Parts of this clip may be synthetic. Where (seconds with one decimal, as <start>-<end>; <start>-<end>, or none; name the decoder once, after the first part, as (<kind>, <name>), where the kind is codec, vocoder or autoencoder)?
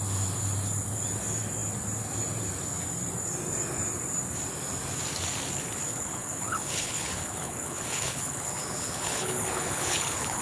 5.9-10.4 (codec, HILCodec)